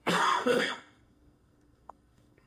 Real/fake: fake